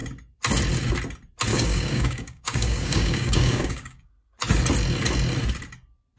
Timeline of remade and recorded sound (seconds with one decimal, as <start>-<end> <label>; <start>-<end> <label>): 0.0-1.5 recorded; 1.5-4.1 remade; 4.1-6.2 recorded